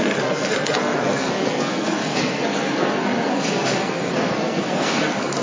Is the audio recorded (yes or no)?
no